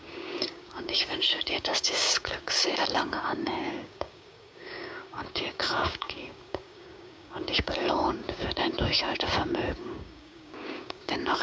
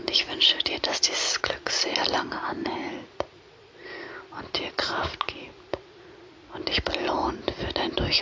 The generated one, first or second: first